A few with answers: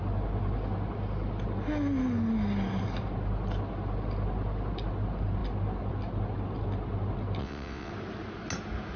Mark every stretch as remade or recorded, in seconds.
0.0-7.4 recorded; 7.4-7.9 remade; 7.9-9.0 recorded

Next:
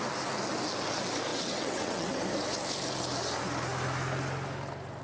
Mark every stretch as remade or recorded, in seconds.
0.0-1.3 recorded; 1.3-2.2 remade; 2.2-5.0 recorded

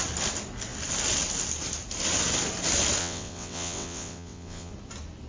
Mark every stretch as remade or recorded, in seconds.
0.0-3.0 recorded; 3.0-4.7 remade; 4.7-5.3 recorded

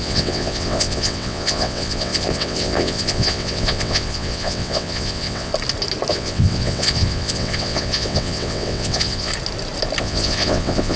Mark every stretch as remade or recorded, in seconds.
0.0-5.5 remade; 5.5-6.1 recorded; 6.1-9.3 remade; 9.3-10.0 recorded; 10.0-11.0 remade